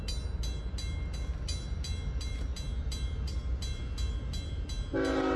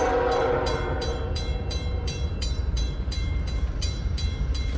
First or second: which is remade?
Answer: second